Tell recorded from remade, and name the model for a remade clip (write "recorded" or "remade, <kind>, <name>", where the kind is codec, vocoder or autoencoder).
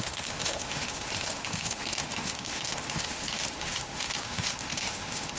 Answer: remade, autoencoder, DAC-VAE